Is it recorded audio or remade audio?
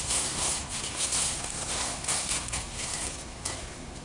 remade